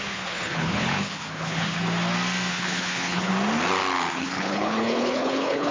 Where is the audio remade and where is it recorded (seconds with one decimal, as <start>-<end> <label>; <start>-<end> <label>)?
0.0-1.8 remade; 1.8-2.5 recorded; 2.5-3.3 remade; 3.3-4.1 recorded; 4.1-5.7 remade

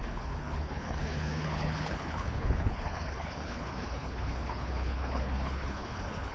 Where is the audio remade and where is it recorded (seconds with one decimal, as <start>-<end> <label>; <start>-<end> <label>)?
0.0-6.3 remade

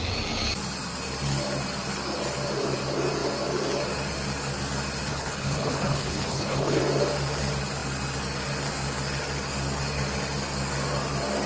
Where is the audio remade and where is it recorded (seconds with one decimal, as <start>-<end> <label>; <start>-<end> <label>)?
0.0-5.1 recorded; 5.1-6.8 remade; 6.8-11.5 recorded

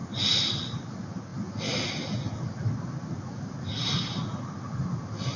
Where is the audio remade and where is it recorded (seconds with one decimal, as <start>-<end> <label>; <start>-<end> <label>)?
0.0-5.4 recorded